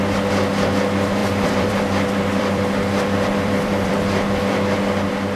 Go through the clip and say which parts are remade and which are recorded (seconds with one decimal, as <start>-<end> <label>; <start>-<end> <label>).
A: 0.0-1.2 recorded; 1.2-4.4 remade; 4.4-5.4 recorded